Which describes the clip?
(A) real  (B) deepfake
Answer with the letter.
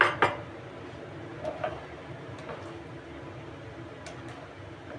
A